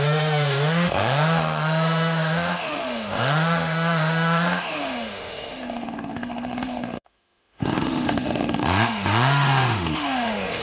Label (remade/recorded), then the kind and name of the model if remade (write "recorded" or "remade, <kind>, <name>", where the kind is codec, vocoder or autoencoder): remade, autoencoder, DAC-VAE